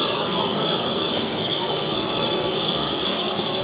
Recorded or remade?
remade